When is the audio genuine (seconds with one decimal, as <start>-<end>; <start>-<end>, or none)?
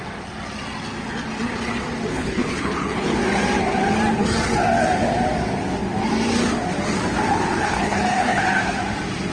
0.0-2.1; 3.2-7.6; 8.4-9.3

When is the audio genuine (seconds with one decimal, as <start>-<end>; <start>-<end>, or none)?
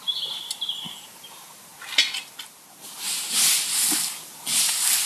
1.7-5.1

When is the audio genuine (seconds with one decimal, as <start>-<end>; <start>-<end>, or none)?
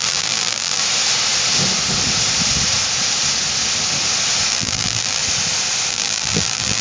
0.8-4.5; 5.2-5.9